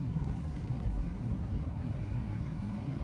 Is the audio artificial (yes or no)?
yes